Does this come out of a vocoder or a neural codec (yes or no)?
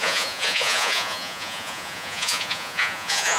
yes